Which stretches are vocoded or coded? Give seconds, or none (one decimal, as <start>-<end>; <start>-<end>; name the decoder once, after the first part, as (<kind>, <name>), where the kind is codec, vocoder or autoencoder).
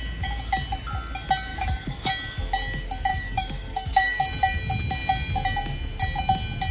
1.5-2.1 (codec, DAC); 3.1-4.2